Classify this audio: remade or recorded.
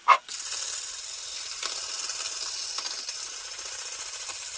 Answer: recorded